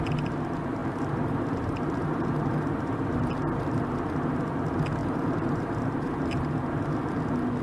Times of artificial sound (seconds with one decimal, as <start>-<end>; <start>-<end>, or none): 0.8-3.2; 5.0-6.8